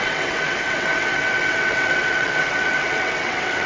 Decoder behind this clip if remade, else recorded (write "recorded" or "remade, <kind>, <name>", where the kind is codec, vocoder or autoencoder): remade, vocoder, WaveNeXt